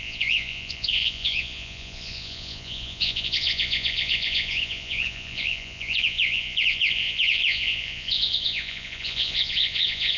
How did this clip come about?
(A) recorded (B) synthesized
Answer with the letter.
B